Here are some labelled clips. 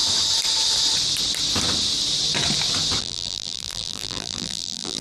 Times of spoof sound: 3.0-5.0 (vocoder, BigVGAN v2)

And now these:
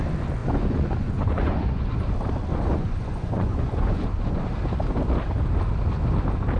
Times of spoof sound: 0.4-1.9 (vocoder, Vocos); 2.5-4.4